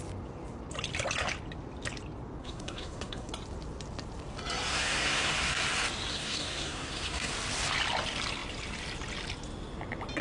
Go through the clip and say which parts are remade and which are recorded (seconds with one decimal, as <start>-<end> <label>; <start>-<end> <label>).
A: 0.0-2.4 recorded; 2.4-3.3 remade; 3.3-4.7 recorded; 4.7-5.3 remade; 5.3-6.1 recorded; 6.1-7.3 remade; 7.3-10.2 recorded